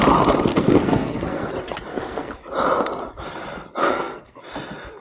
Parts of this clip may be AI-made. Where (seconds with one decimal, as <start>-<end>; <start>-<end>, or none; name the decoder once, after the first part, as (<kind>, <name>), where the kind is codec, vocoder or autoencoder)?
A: 0.5-1.5 (codec, SNAC); 1.9-2.4; 3.8-4.4